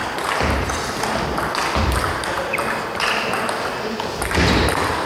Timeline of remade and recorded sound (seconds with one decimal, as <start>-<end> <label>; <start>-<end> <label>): 0.0-5.1 recorded